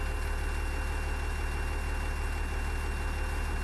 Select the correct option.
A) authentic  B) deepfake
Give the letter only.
A